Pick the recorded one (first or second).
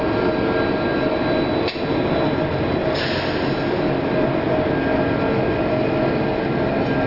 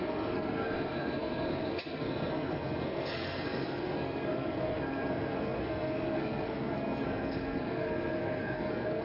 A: first